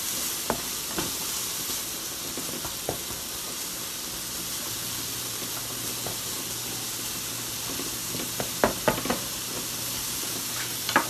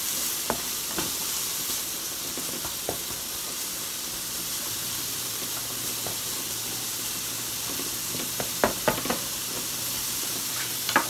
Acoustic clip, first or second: first